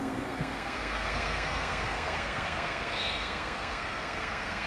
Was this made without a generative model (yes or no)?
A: no